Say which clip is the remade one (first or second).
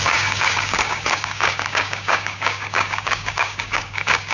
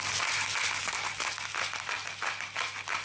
first